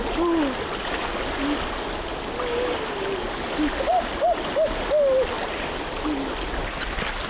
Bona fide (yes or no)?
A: yes